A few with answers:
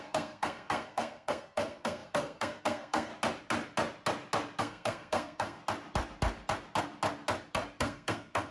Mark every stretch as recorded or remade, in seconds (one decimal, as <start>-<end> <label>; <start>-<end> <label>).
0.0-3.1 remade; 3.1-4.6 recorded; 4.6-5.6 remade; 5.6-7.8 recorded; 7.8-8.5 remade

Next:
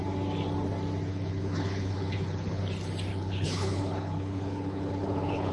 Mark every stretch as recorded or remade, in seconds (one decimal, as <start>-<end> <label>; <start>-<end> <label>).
0.0-1.1 recorded; 1.1-2.6 remade; 2.6-3.1 recorded; 3.1-5.5 remade

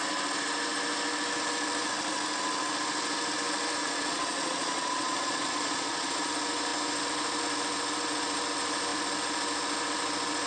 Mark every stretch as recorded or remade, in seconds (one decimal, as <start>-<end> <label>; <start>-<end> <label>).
0.0-3.8 recorded; 3.8-6.3 remade; 6.3-10.5 recorded

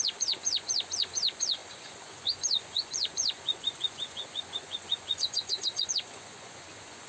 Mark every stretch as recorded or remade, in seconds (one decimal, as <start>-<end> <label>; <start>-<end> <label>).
0.0-7.1 remade

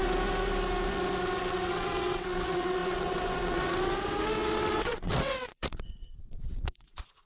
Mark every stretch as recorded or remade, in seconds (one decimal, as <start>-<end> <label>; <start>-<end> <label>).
0.0-1.4 recorded; 1.4-7.3 remade